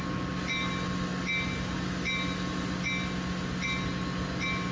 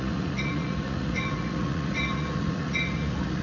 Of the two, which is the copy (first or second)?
second